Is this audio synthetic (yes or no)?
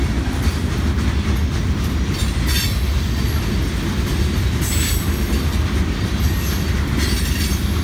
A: no